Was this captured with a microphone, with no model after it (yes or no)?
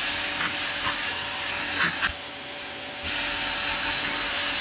yes